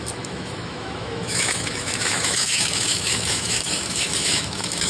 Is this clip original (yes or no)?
no